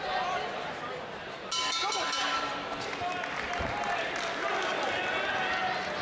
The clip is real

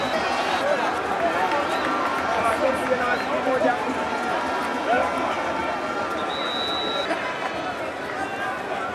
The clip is real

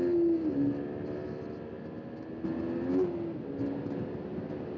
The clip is real